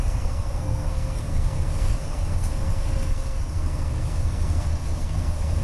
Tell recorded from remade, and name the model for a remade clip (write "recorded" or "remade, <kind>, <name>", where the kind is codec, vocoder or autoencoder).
remade, codec, SNAC